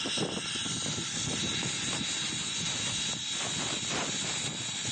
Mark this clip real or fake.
real